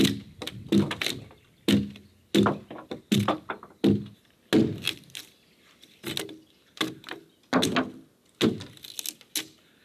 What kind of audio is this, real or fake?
real